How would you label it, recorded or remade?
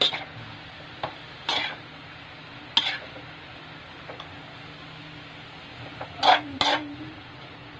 recorded